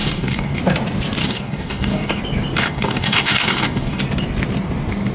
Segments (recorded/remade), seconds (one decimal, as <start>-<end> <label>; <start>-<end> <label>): 0.0-0.6 remade; 0.6-1.2 recorded; 1.2-2.2 remade; 2.2-2.6 recorded; 2.6-4.0 remade; 4.0-5.1 recorded